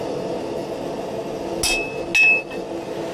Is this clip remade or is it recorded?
recorded